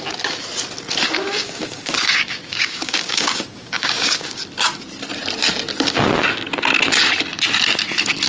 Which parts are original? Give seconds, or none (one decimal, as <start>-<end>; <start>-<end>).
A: 0.0-1.3; 4.4-8.3